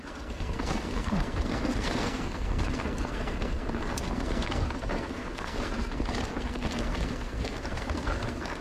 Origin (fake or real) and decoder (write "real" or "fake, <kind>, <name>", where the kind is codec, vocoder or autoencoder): fake, codec, SNAC